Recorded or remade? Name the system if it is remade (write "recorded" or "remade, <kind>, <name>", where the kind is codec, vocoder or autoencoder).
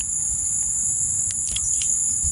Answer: recorded